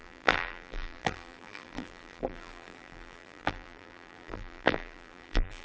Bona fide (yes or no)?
no